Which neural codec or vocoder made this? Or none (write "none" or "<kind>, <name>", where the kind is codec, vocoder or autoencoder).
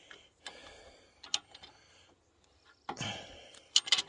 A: none